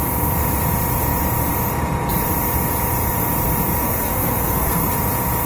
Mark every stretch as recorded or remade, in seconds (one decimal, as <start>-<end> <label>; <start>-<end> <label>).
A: 0.0-3.8 recorded; 3.8-4.9 remade; 4.9-5.5 recorded